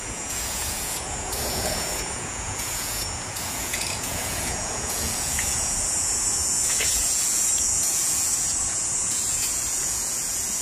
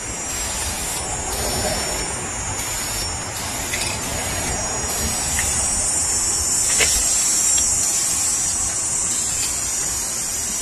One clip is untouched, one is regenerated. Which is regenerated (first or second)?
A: first